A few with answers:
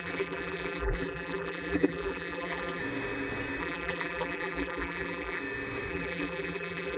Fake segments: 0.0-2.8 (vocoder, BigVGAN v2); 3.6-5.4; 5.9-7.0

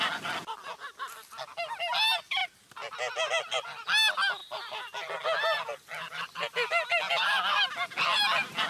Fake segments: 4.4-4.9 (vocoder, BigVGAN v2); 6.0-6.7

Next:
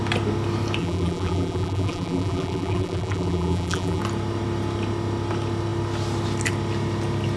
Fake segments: 0.8-4.0 (vocoder, BigVGAN v2)